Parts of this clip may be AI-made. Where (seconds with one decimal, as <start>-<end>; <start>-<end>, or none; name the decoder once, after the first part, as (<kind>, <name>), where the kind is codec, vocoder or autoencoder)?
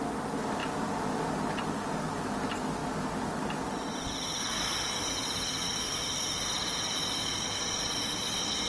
none